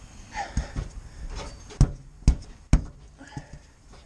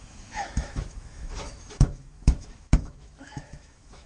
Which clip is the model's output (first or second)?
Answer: second